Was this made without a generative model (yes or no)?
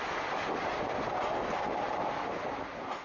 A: yes